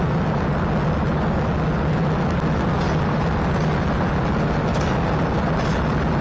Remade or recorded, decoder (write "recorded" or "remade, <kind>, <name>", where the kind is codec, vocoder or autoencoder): recorded